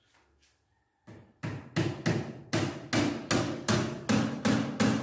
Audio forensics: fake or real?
real